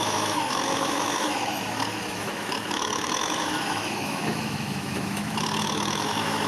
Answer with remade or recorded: remade